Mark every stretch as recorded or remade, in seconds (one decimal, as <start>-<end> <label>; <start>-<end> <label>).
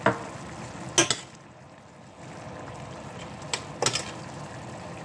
0.0-5.0 recorded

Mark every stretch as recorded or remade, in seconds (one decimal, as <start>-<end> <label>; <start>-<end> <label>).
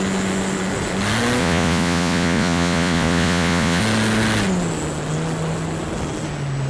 0.0-1.4 recorded; 1.4-3.8 remade; 3.8-6.7 recorded